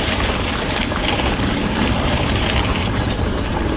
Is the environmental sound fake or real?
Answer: real